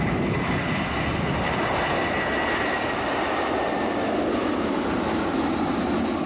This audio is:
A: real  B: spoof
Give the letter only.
A